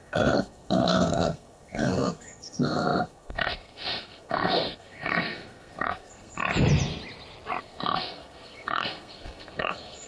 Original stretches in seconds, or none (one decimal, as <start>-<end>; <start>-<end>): 6.4-7.6